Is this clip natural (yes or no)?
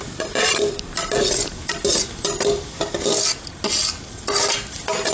yes